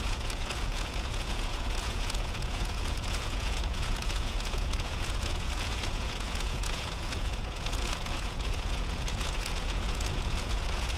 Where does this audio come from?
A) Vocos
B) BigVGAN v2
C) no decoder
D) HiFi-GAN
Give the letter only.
A